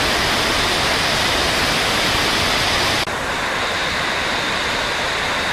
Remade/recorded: recorded